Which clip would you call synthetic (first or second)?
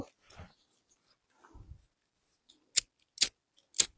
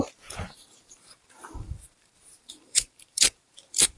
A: second